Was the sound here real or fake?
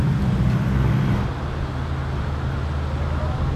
real